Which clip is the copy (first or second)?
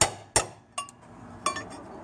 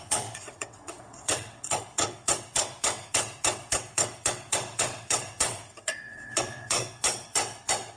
second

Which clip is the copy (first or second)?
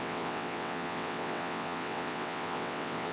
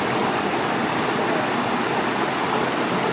first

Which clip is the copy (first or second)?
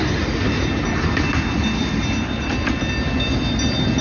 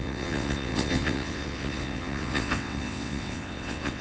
second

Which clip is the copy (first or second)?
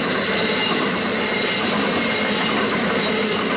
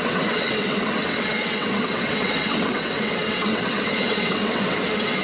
second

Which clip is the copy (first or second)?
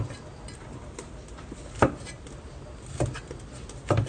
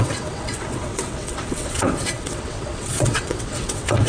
second